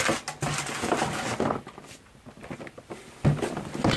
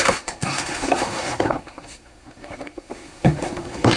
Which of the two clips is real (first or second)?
first